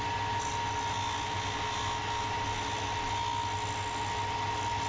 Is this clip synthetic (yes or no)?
no